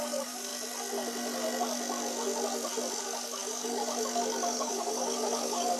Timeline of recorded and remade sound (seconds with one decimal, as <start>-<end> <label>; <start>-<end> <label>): 0.0-0.5 remade; 0.5-3.0 recorded; 3.0-5.8 remade